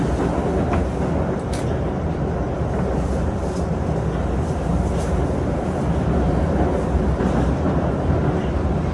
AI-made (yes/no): no